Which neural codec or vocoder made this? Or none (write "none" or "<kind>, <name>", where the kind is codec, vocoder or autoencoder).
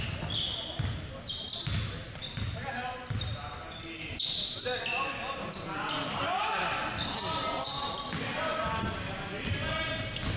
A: none